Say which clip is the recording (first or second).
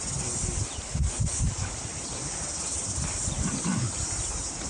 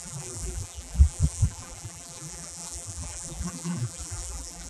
first